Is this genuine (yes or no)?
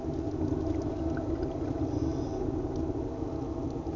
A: yes